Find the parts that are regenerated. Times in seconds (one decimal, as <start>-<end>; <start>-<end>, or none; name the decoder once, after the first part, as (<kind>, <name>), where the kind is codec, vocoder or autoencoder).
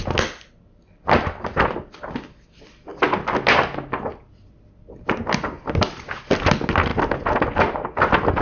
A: none